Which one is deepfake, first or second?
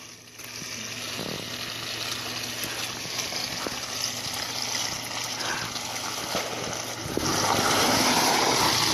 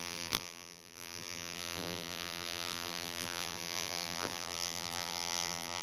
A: second